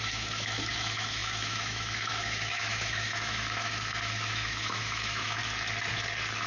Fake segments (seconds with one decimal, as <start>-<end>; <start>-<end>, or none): 0.0-5.4